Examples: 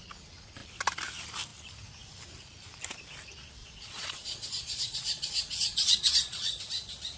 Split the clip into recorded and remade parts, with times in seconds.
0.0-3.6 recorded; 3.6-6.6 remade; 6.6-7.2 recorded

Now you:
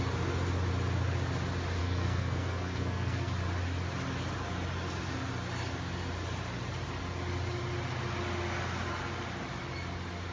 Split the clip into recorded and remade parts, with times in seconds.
0.0-1.8 recorded; 1.8-3.3 remade; 3.3-10.3 recorded

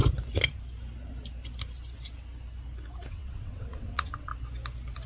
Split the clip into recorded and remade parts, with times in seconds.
0.0-3.1 recorded; 3.1-4.3 remade; 4.3-5.1 recorded

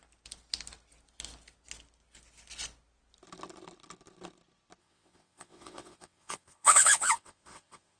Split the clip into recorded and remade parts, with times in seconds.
0.0-4.8 recorded; 4.8-8.0 remade